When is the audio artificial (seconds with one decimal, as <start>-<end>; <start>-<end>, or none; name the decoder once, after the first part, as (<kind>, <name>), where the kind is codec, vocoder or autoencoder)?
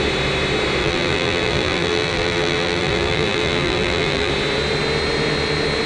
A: 0.8-4.3 (vocoder, BigVGAN v2)